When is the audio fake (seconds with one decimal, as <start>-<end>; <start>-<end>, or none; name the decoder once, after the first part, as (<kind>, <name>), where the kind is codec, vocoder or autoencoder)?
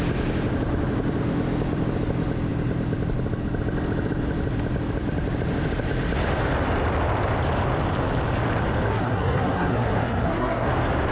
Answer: 8.9-10.7 (codec, SNAC)